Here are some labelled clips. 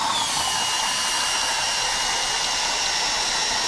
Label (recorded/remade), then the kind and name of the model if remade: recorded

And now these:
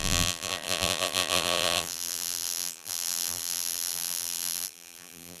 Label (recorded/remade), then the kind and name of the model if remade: remade, vocoder, BigVGAN v2